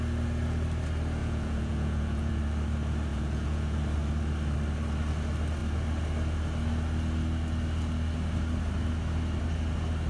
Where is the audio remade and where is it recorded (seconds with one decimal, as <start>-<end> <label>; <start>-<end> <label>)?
0.0-1.2 recorded; 1.2-2.3 remade; 2.3-3.1 recorded; 3.1-3.8 remade; 3.8-10.1 recorded